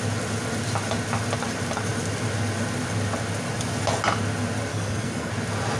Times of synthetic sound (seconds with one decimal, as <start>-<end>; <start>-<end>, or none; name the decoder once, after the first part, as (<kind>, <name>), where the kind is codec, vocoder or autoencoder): 4.7-5.3 (codec, SNAC)